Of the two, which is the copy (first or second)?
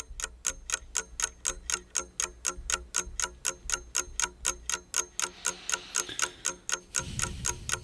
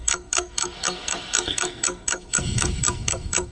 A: second